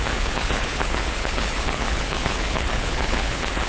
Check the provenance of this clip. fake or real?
fake